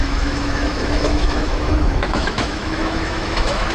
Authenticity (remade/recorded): remade